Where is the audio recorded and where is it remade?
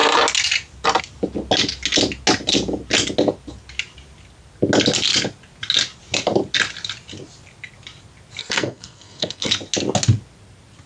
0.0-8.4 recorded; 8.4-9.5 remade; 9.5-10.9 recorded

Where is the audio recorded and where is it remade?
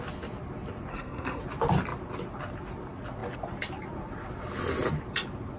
0.0-0.9 recorded; 0.9-1.4 remade; 1.4-5.6 recorded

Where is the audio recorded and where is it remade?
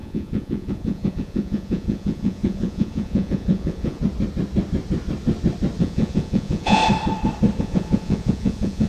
0.0-4.0 remade; 4.0-5.8 recorded; 5.8-6.8 remade; 6.8-7.6 recorded; 7.6-8.9 remade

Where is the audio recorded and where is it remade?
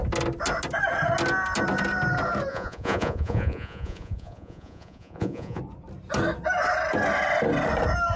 0.0-2.5 recorded; 2.5-5.6 remade; 5.6-8.2 recorded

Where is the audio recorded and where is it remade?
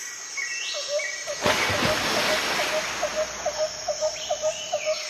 0.0-5.1 recorded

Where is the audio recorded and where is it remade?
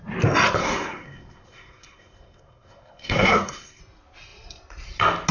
0.0-0.6 recorded; 0.6-3.8 remade; 3.8-5.3 recorded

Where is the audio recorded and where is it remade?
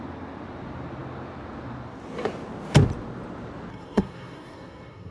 0.0-3.7 recorded; 3.7-5.1 remade